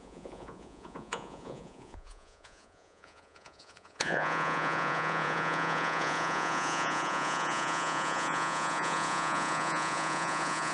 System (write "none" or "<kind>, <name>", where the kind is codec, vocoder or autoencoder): vocoder, Vocos